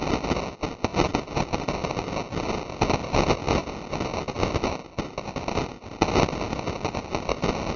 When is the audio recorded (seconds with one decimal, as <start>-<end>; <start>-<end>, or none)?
0.0-7.8